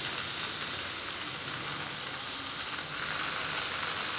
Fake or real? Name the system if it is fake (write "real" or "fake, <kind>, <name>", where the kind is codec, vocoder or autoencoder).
real